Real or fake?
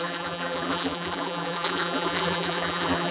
fake